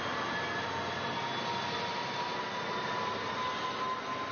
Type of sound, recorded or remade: recorded